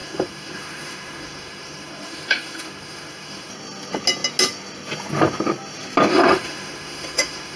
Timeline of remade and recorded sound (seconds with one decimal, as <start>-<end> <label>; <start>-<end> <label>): 0.0-3.5 remade; 3.5-6.1 recorded; 6.1-7.6 remade